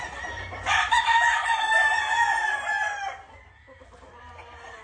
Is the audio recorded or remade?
recorded